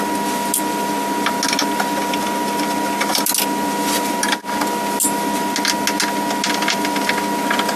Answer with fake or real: real